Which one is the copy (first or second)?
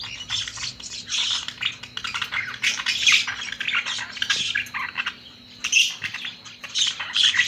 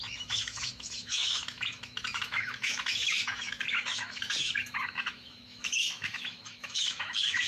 second